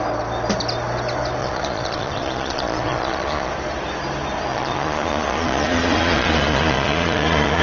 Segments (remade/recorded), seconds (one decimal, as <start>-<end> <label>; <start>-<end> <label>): 0.0-1.4 recorded; 1.4-3.5 remade; 3.5-4.5 recorded; 4.5-7.6 remade